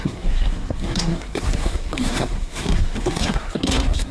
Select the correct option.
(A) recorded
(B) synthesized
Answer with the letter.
B